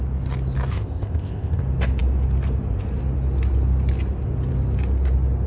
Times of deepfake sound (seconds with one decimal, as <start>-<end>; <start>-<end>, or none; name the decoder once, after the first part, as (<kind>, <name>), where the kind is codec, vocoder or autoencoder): 0.7-1.6 (codec, ZipCodec)